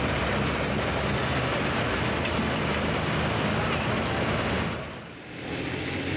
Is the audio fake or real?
real